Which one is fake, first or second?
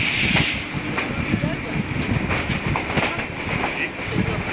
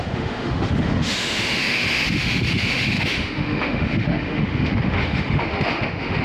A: second